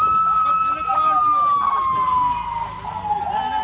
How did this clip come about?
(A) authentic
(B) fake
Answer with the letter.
A